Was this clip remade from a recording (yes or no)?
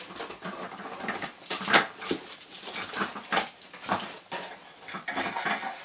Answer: no